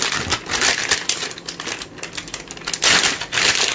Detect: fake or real real